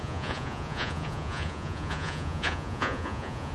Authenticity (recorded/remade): remade